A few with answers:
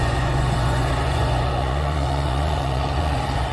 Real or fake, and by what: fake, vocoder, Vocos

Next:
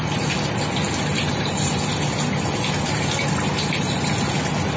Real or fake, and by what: real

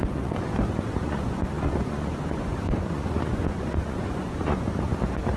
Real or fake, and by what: fake, vocoder, Vocos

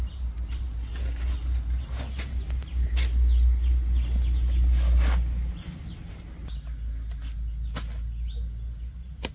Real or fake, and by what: real